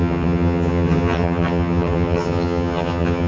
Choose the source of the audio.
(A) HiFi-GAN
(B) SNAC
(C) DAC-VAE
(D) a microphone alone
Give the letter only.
A